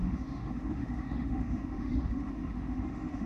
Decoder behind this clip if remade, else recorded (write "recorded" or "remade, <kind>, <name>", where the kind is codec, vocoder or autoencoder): remade, autoencoder, DAC-VAE